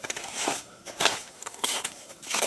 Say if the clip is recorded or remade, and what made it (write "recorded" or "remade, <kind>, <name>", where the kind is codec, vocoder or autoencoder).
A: remade, codec, SNAC